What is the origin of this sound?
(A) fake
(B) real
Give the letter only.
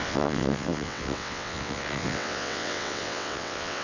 A